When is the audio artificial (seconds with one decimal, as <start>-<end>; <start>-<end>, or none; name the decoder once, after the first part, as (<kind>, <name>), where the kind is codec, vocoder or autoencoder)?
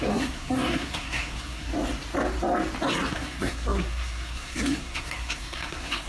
0.0-1.7 (codec, SNAC); 3.1-6.1